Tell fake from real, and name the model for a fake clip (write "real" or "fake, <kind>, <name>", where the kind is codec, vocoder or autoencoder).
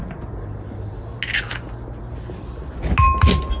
real